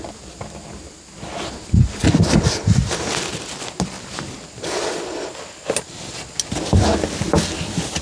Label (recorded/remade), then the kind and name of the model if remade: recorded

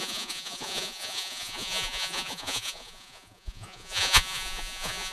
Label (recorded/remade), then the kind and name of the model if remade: remade, vocoder, Vocos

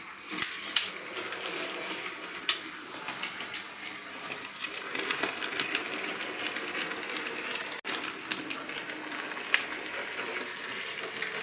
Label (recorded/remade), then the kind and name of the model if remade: recorded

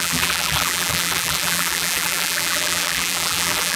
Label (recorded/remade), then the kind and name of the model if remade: remade, vocoder, BigVGAN v2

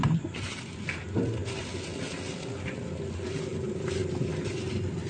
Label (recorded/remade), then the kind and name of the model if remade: recorded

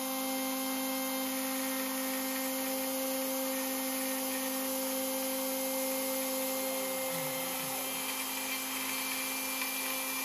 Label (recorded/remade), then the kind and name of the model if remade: recorded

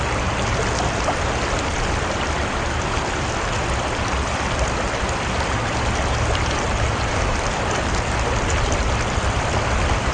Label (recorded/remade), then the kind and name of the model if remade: recorded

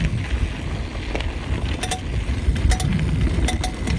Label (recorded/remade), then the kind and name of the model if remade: recorded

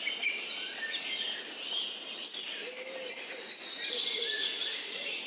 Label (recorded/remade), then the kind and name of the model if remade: remade, vocoder, BigVGAN v2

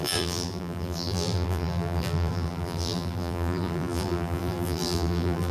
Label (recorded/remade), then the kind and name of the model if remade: remade, vocoder, BigVGAN v2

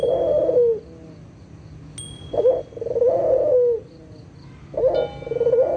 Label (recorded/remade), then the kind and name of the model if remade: recorded